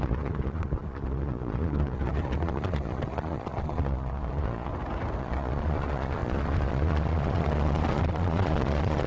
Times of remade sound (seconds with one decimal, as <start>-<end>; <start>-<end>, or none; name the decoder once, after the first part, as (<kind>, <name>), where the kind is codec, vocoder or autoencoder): 0.0-4.7 (vocoder, Vocos); 5.2-9.1